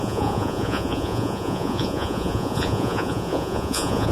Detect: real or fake fake